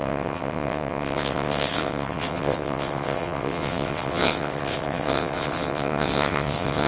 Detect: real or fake fake